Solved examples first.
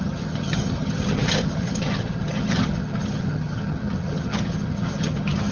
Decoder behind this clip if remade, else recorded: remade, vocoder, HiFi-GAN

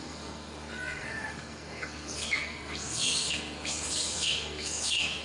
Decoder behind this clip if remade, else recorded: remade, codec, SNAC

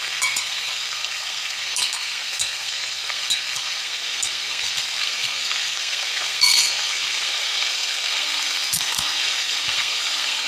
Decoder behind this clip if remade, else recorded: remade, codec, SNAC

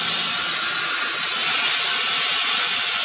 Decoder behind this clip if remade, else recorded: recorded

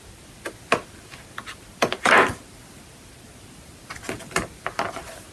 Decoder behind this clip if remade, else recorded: recorded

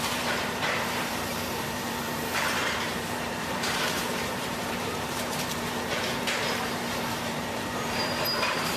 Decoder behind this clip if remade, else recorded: remade, vocoder, BigVGAN v2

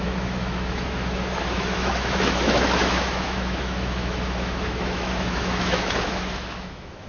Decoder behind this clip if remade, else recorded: remade, autoencoder, DAC-VAE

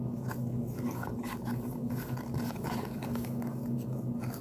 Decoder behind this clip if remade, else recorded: remade, codec, DAC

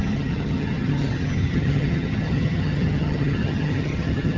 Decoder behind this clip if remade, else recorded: remade, vocoder, HiFi-GAN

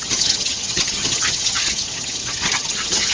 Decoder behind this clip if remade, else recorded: remade, vocoder, HiFi-GAN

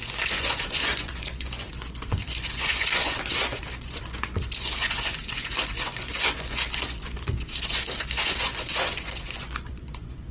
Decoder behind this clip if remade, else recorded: remade, vocoder, Vocos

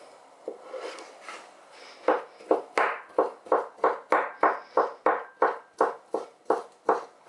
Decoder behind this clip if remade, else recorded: recorded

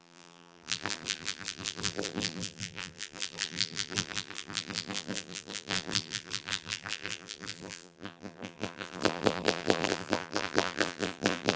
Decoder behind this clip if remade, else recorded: remade, vocoder, BigVGAN v2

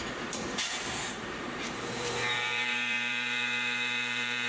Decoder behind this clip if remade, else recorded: remade, vocoder, BigVGAN v2